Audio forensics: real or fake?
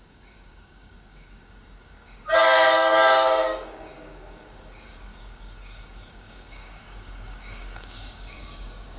fake